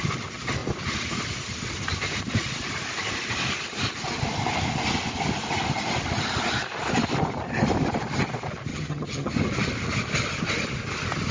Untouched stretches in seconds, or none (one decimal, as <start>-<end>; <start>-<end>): 0.0-8.7; 9.3-11.3

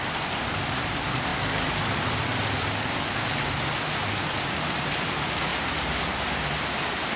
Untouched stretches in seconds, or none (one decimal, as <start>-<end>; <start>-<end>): 1.3-4.1; 5.5-6.3